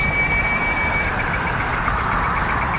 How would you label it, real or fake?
real